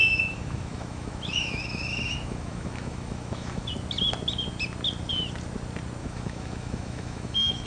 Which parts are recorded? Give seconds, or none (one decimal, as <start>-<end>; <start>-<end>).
3.7-6.0